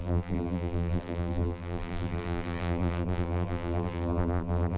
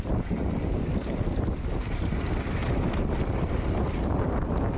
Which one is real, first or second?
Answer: second